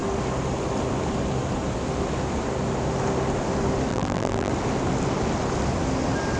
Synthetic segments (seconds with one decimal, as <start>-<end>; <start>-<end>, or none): 3.9-4.5